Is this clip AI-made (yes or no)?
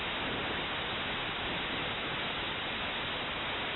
no